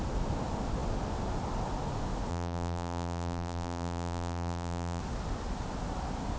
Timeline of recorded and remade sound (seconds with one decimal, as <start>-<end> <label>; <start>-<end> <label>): 0.0-2.3 recorded; 2.3-5.0 remade; 5.0-6.4 recorded